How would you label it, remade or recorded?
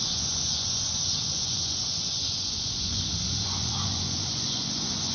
remade